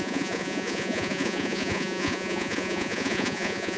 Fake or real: fake